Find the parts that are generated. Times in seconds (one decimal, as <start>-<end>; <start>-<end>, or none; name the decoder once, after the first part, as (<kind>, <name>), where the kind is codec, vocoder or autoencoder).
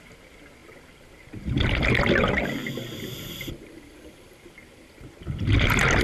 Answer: none